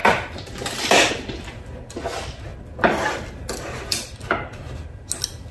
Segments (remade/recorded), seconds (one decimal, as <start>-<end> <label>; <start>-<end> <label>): 0.0-1.1 remade; 1.1-2.5 recorded; 2.5-4.1 remade; 4.1-5.5 recorded